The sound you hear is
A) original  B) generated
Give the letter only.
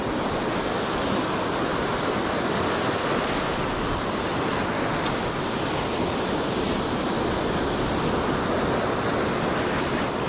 A